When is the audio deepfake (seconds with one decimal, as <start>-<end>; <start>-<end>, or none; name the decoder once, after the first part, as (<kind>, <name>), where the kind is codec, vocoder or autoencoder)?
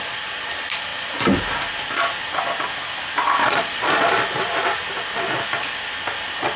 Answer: 3.4-4.1 (vocoder, Vocos)